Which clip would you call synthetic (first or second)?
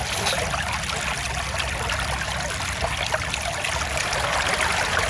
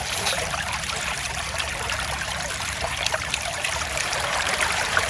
second